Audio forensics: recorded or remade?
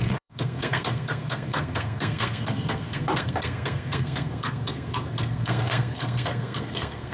remade